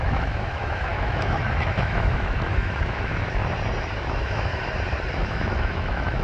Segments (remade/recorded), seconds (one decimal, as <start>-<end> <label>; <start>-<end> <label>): 0.0-3.4 remade; 3.4-4.0 recorded; 4.0-4.5 remade; 4.5-5.1 recorded; 5.1-6.2 remade